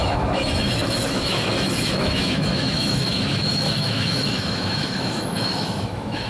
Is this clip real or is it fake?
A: fake